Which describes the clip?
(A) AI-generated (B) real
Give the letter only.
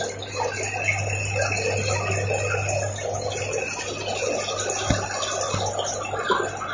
B